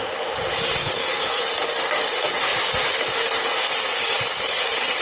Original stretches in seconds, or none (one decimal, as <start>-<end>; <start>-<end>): 0.0-0.8; 1.4-5.0